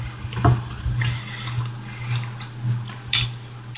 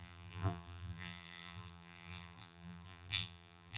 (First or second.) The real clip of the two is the first